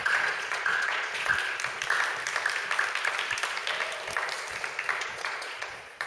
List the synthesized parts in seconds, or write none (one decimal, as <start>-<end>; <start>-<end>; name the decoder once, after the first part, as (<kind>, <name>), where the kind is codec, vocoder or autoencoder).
0.0-1.3 (vocoder, Vocos); 5.0-6.1